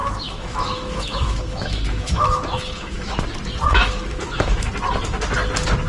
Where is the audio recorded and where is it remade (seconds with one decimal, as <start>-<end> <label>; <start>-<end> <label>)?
0.0-3.2 remade; 3.2-3.7 recorded; 3.7-4.7 remade; 4.7-5.9 recorded